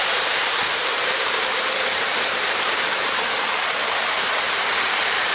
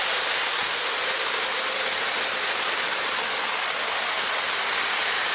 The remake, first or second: first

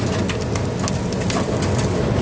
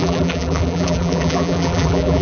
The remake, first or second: second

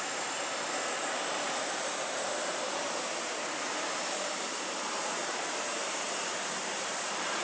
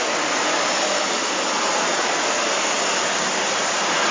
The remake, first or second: first